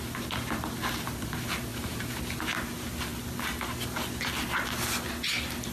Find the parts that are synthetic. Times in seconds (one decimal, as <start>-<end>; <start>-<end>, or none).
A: 1.7-2.2